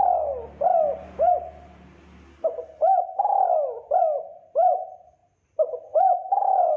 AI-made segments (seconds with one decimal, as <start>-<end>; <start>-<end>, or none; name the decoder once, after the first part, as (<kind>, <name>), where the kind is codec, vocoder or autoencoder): 4.3-4.8 (vocoder, BigVGAN v2); 5.2-6.8